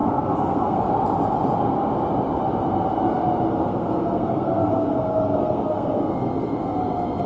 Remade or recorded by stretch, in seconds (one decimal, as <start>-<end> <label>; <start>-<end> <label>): 0.0-0.8 remade; 0.8-3.5 recorded; 3.5-6.8 remade; 6.8-7.3 recorded